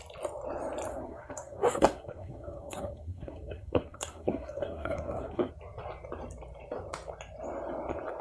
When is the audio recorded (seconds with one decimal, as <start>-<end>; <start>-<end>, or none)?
0.0-0.9; 5.5-8.2